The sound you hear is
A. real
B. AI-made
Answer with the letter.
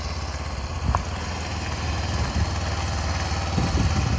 A